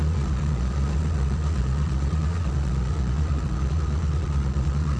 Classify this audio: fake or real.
fake